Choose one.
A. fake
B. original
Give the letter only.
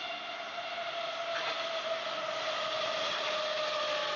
B